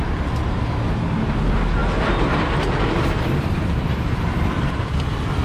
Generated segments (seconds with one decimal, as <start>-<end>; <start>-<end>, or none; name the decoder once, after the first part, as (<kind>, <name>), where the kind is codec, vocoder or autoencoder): 1.8-5.0 (vocoder, BigVGAN v2)